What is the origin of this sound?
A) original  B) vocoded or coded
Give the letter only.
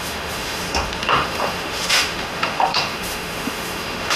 B